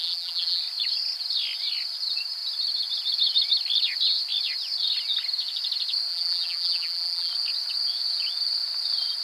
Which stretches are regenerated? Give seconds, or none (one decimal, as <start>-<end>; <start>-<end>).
0.0-0.6; 6.1-7.3